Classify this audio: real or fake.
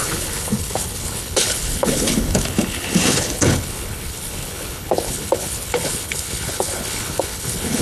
fake